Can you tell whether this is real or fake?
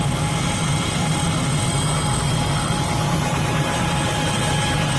real